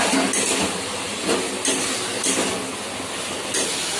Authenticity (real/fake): real